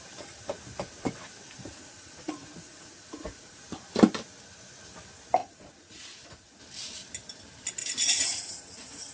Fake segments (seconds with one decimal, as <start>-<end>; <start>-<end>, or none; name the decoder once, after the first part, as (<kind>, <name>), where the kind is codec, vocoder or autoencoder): 1.7-3.6 (vocoder, Vocos); 5.4-6.6; 7.8-9.1